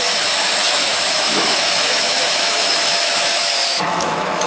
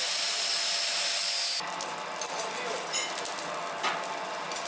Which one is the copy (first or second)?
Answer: first